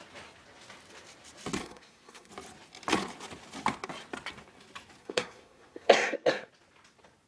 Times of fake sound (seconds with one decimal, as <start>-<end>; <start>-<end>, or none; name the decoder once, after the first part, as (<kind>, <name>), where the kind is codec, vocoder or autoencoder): 1.6-2.3 (codec, SNAC); 5.0-6.5